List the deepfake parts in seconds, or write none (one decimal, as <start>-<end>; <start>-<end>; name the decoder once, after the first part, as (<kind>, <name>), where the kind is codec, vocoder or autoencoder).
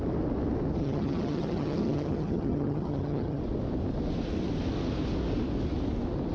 0.8-3.4 (vocoder, HiFi-GAN)